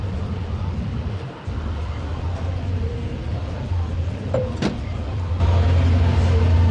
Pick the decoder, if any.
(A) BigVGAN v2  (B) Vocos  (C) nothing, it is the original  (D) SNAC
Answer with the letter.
C